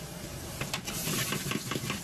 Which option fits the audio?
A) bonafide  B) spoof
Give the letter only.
A